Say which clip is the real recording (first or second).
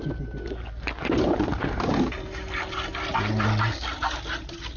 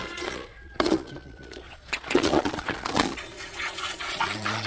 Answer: first